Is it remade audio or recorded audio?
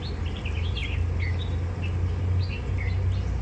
recorded